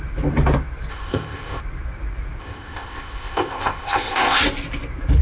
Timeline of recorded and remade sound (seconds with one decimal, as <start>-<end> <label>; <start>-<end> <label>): 0.0-0.9 recorded; 0.9-1.6 remade; 1.6-2.4 recorded; 2.4-4.4 remade; 4.4-5.2 recorded